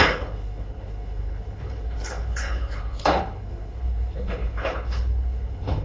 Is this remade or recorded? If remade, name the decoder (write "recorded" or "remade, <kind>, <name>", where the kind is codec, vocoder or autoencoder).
remade, codec, HILCodec